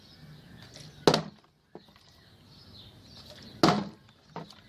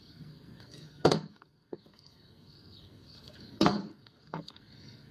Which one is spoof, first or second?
second